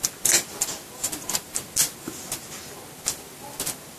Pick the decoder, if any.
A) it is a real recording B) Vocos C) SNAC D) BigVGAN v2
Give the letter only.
A